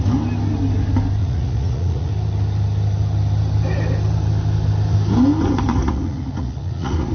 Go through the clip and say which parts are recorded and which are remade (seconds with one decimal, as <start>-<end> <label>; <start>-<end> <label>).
0.0-1.2 recorded; 1.2-2.1 remade; 2.1-5.7 recorded; 5.7-7.1 remade